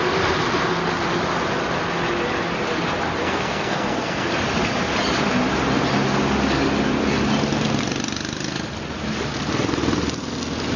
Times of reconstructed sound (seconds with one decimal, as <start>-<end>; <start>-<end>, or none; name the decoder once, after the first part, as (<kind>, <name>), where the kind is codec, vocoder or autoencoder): 3.2-4.3 (codec, SNAC)